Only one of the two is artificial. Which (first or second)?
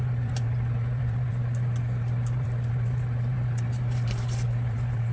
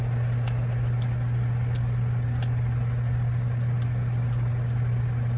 first